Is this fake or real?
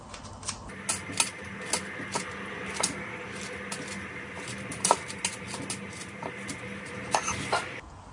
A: real